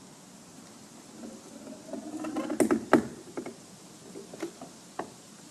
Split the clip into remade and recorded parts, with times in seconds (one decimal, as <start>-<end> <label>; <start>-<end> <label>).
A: 0.0-3.1 recorded; 3.1-3.6 remade; 3.6-5.5 recorded